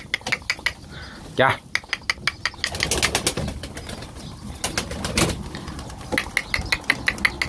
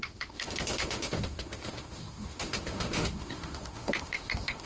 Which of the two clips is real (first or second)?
first